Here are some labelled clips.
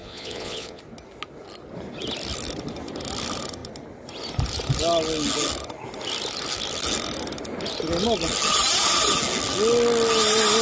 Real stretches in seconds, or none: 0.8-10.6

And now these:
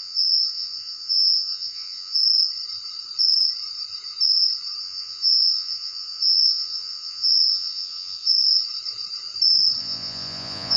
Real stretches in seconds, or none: 2.2-4.8; 8.3-9.8

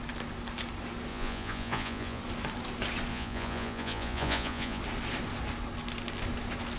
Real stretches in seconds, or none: 0.0-1.1; 2.2-3.1; 4.8-6.8

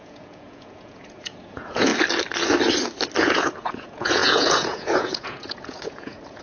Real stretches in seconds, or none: 1.9-3.2